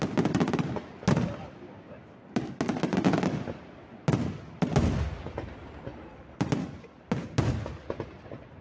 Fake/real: real